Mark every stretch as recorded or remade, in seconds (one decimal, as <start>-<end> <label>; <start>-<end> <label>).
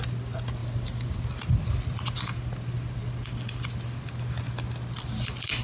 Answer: 0.0-0.6 recorded; 0.6-1.2 remade; 1.2-5.6 recorded